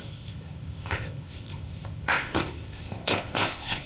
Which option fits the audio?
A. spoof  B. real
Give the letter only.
A